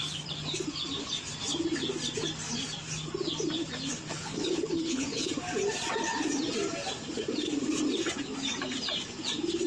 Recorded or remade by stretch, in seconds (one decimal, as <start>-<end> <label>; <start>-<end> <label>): 0.0-4.1 recorded; 4.1-5.3 remade; 5.3-9.7 recorded